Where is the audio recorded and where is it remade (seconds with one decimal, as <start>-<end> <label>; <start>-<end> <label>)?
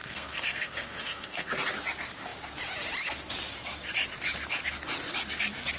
0.0-1.5 remade; 1.5-5.8 recorded